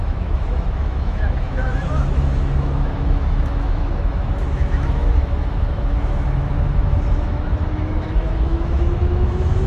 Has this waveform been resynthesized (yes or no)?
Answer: yes